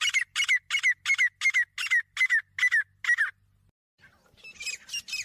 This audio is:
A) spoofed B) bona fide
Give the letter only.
B